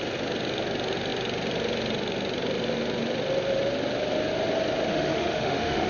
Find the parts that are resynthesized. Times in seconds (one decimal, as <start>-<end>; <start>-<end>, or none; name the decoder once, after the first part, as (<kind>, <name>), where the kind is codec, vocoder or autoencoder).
4.9-5.9 (autoencoder, DAC-VAE)